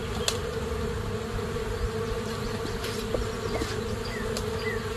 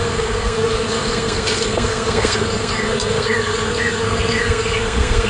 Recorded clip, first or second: first